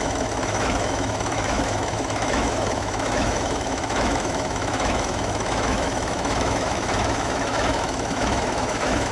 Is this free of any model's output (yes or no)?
no